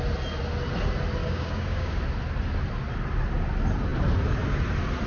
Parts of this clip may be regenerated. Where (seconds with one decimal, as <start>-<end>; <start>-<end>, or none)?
1.2-2.0